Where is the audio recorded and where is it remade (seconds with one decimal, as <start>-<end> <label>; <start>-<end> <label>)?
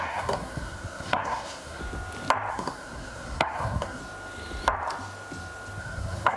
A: 0.0-1.8 remade; 1.8-2.5 recorded; 2.5-4.0 remade; 4.0-5.8 recorded; 5.8-6.4 remade